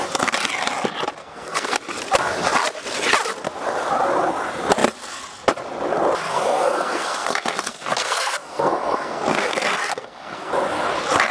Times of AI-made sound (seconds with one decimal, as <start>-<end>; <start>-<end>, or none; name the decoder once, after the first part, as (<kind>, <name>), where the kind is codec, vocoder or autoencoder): 1.2-1.8 (codec, SNAC); 6.3-10.5